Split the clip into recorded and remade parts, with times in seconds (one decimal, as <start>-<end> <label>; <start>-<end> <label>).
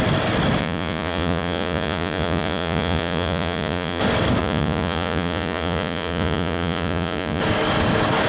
0.0-0.6 recorded; 0.6-4.0 remade; 4.0-4.4 recorded; 4.4-7.4 remade; 7.4-8.3 recorded